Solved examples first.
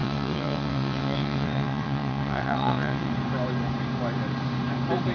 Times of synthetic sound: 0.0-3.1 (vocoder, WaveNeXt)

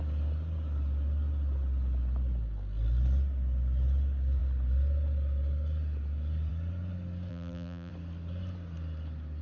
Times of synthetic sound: 7.3-7.9 (vocoder, BigVGAN v2)

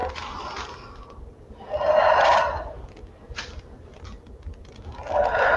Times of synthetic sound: none

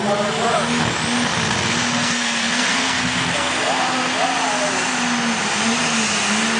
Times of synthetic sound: 1.9-3.5 (codec, SNAC)

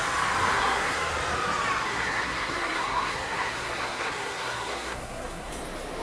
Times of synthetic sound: 0.5-1.1 (codec, SNAC); 1.9-5.5